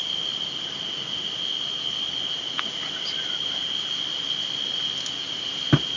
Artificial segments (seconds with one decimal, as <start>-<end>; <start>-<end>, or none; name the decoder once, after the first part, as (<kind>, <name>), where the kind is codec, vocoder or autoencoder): none